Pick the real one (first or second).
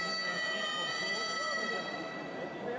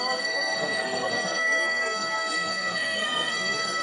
first